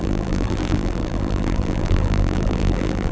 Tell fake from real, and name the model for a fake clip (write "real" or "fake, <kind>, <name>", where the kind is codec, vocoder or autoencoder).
fake, vocoder, BigVGAN v2